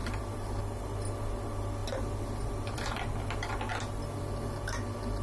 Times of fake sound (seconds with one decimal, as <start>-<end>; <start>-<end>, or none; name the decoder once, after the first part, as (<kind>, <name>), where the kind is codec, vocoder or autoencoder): 0.0-0.6 (vocoder, BigVGAN v2); 1.8-3.0